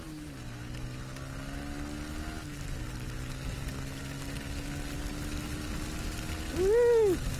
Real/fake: real